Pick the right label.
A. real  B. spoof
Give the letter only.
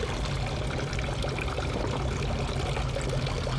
A